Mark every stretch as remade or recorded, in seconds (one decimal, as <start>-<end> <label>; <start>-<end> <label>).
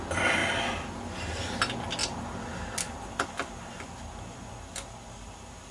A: 0.0-5.7 recorded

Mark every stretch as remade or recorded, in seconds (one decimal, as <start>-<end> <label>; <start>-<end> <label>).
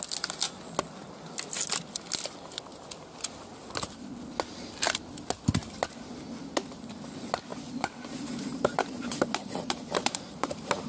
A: 0.0-7.5 recorded; 7.5-10.9 remade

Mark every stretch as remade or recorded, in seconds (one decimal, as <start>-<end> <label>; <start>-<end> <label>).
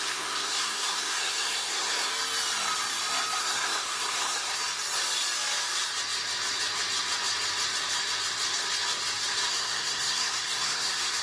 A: 0.0-2.1 remade; 2.1-3.4 recorded; 3.4-4.6 remade; 4.6-9.5 recorded; 9.5-11.2 remade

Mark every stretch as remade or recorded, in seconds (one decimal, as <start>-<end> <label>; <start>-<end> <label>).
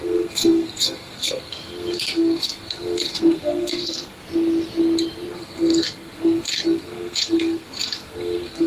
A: 0.0-4.2 remade; 4.2-5.3 recorded; 5.3-8.7 remade